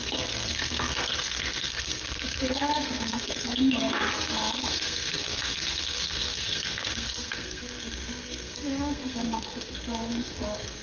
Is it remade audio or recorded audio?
remade